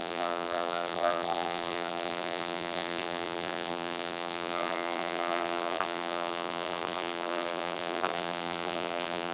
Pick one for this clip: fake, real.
fake